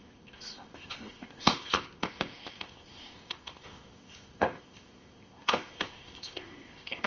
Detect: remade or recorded remade